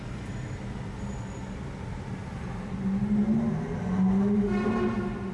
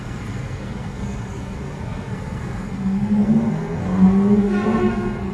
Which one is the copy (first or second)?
second